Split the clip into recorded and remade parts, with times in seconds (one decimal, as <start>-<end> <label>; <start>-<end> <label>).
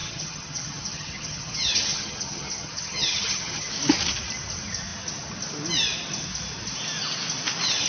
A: 0.0-3.7 remade; 3.7-7.9 recorded